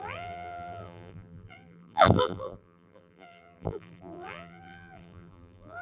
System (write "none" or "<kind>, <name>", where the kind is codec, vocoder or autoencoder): vocoder, BigVGAN v2